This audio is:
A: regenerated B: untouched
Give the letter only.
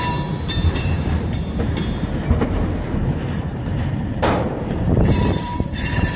A